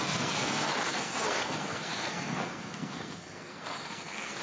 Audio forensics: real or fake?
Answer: fake